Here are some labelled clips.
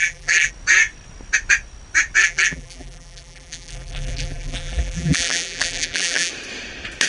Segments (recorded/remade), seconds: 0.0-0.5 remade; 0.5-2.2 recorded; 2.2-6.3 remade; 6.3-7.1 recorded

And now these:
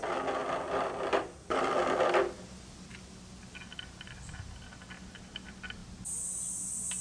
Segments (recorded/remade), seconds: 0.0-7.0 recorded

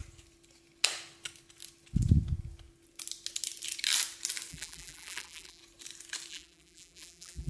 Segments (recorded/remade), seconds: 0.0-4.5 recorded; 4.5-5.6 remade; 5.6-6.3 recorded; 6.3-7.5 remade

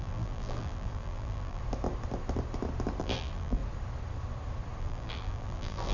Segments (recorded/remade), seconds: 0.0-1.6 remade; 1.6-3.0 recorded; 3.0-3.6 remade; 3.6-4.8 recorded; 4.8-5.9 remade

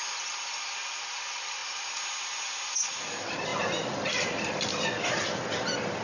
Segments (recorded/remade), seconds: 0.0-3.5 recorded; 3.5-4.7 remade; 4.7-6.0 recorded

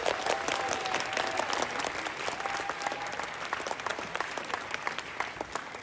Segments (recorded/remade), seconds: 0.0-3.9 recorded; 3.9-5.2 remade; 5.2-5.8 recorded

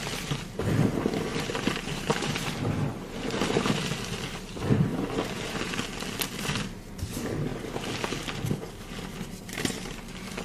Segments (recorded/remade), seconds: 0.0-1.3 recorded; 1.3-3.7 remade; 3.7-4.9 recorded; 4.9-5.7 remade; 5.7-10.4 recorded

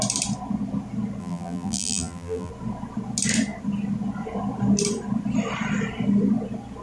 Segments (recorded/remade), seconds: 0.0-1.2 recorded; 1.2-2.5 remade; 2.5-6.8 recorded